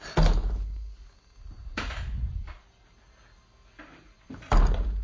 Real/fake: real